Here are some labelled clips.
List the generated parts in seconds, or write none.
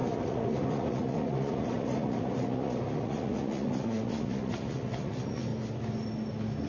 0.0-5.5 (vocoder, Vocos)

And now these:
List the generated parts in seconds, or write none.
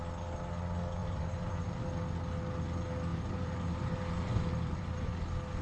1.0-1.8 (vocoder, BigVGAN v2); 3.1-5.1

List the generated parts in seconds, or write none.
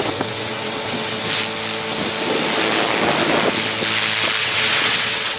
0.0-1.2 (vocoder, WaveNeXt); 4.4-5.4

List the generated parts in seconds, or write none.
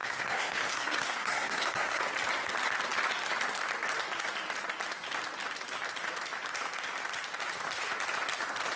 0.0-2.0 (codec, SNAC)